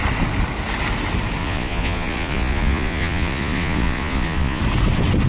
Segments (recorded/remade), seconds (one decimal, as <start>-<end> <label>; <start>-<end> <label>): 0.0-1.4 recorded; 1.4-4.6 remade; 4.6-5.3 recorded